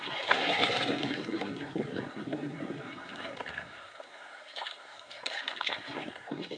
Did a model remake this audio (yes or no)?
yes